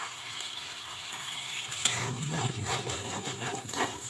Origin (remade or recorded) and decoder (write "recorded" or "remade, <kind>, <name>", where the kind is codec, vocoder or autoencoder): remade, codec, SNAC